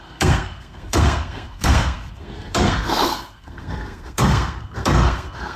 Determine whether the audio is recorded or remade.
remade